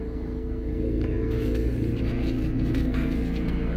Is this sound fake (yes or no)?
yes